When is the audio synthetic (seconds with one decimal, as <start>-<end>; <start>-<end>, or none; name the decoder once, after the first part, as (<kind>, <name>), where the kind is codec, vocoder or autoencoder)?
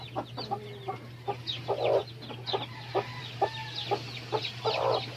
2.0-3.2 (vocoder, BigVGAN v2); 3.6-4.4